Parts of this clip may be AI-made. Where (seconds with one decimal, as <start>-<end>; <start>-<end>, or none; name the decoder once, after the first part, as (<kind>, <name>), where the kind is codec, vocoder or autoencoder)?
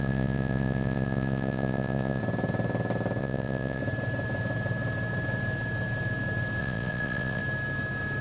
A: 0.0-2.2 (vocoder, Vocos); 3.2-3.8; 6.6-7.4